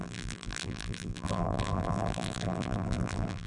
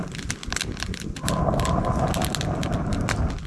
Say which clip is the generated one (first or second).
first